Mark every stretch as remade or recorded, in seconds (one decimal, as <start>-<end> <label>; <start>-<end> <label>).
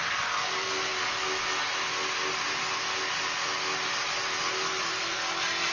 0.0-5.7 recorded